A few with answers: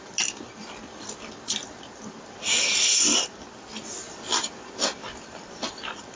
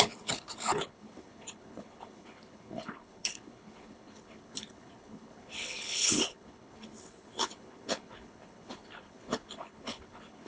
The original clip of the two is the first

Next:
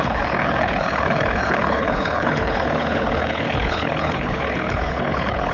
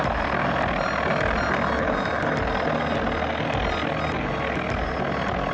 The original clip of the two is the second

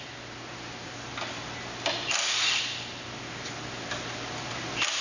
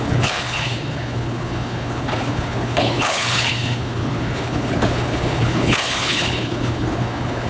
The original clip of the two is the first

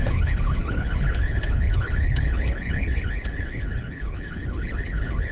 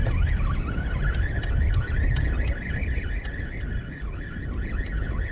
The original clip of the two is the second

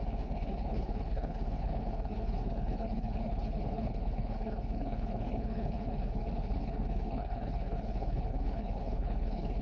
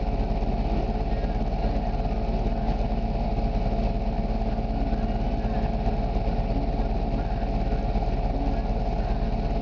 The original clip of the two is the second